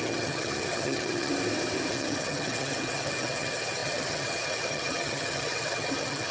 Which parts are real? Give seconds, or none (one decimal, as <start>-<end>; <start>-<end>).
1.3-1.9